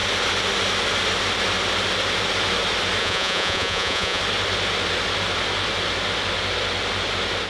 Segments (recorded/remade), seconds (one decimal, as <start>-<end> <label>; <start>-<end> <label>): 0.0-3.0 recorded; 3.0-4.2 remade; 4.2-7.5 recorded